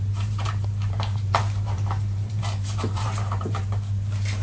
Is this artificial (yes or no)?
yes